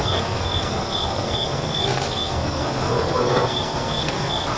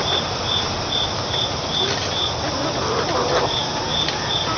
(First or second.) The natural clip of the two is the second